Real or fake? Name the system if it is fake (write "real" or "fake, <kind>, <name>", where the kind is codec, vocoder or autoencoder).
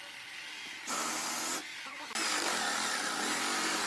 real